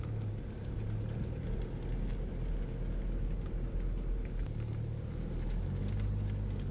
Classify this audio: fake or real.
real